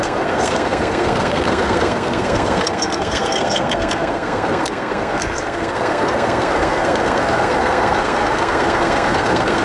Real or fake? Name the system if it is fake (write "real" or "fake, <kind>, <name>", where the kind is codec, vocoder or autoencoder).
fake, codec, SNAC